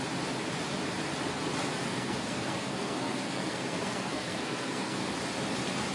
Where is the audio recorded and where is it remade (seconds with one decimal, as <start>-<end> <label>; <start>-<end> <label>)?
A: 0.0-1.9 recorded; 1.9-5.1 remade; 5.1-5.9 recorded